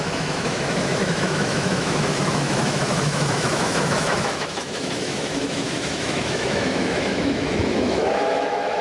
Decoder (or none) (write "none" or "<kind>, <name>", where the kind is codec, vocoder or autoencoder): autoencoder, DAC-VAE